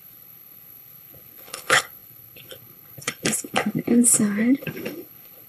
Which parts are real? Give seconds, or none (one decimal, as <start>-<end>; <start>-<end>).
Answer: none